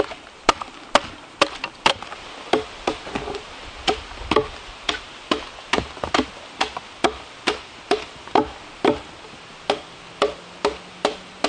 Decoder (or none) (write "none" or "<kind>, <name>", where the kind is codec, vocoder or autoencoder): none